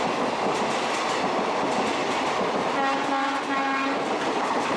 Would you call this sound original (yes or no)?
yes